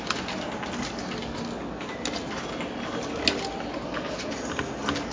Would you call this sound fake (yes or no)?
no